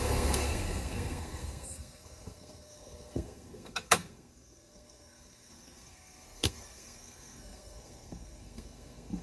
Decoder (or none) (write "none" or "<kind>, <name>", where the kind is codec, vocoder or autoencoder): codec, SNAC